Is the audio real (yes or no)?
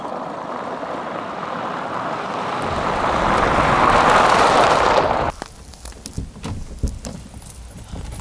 yes